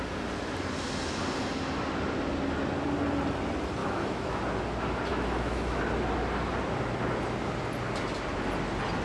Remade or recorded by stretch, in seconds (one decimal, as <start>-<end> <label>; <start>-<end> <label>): 0.0-3.8 recorded; 3.8-4.4 remade; 4.4-5.1 recorded; 5.1-5.8 remade; 5.8-9.0 recorded